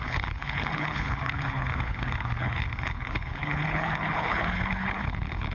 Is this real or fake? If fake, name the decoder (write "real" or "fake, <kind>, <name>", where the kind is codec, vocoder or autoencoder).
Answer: fake, codec, HILCodec